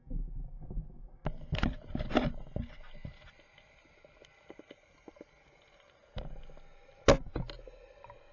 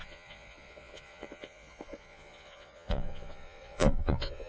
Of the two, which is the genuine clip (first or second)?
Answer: first